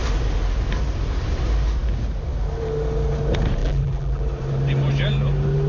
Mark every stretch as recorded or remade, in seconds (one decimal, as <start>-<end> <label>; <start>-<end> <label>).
0.0-3.6 recorded; 3.6-4.2 remade; 4.2-5.7 recorded